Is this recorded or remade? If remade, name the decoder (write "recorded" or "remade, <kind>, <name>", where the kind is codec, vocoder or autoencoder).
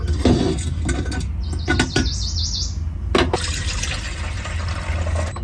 recorded